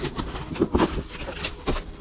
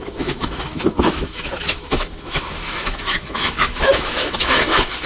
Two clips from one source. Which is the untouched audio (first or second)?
first